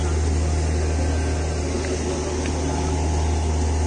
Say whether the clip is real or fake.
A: real